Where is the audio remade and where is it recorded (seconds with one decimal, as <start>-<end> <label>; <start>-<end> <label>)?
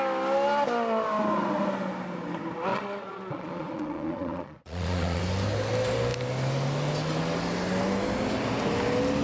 0.0-2.7 recorded; 2.7-5.2 remade; 5.2-9.2 recorded